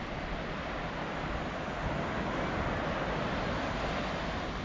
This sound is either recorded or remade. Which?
recorded